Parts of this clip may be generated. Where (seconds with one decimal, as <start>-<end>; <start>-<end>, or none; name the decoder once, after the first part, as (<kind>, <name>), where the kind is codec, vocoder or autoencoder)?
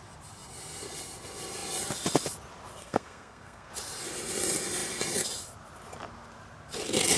2.8-3.7 (codec, SNAC)